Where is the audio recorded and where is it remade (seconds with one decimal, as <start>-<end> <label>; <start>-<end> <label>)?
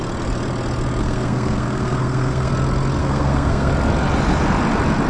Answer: 0.0-1.0 recorded; 1.0-2.5 remade; 2.5-3.0 recorded; 3.0-3.7 remade; 3.7-5.1 recorded